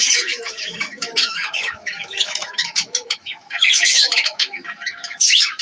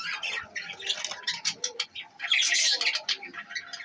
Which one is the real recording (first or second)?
second